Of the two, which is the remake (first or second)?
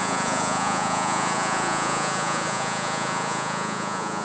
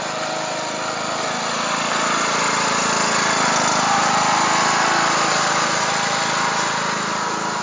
first